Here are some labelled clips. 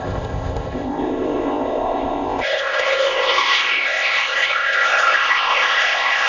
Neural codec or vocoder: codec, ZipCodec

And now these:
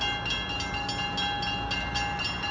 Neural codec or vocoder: none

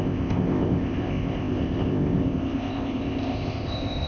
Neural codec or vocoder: codec, ZipCodec